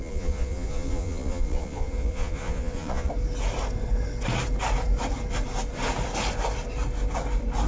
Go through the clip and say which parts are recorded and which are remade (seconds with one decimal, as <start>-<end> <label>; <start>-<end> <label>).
0.0-3.1 remade; 3.1-7.7 recorded